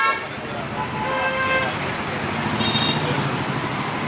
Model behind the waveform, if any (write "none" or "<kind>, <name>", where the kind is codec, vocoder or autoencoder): none